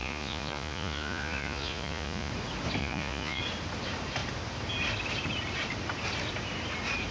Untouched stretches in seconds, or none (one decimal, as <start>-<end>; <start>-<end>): 2.3-2.8; 3.4-7.1